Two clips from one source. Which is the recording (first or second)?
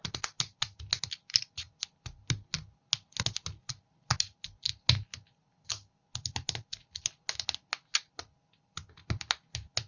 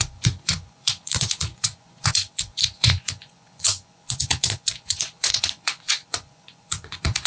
first